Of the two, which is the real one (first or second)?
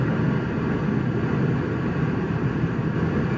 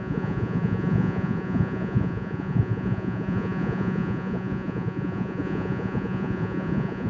first